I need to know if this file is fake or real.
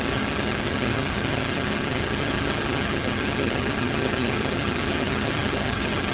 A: fake